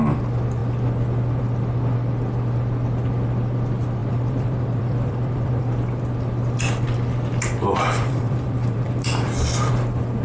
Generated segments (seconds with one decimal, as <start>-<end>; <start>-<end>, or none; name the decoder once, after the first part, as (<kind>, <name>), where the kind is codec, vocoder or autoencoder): 4.0-5.6 (vocoder, BigVGAN v2); 7.3-9.7